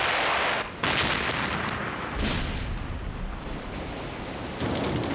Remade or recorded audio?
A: recorded